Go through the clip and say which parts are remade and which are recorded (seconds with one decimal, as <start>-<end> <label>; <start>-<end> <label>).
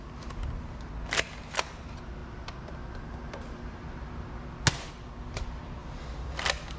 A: 0.0-6.8 recorded